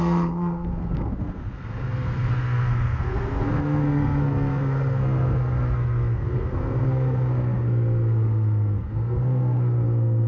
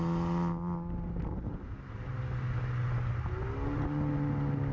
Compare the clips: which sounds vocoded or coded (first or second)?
first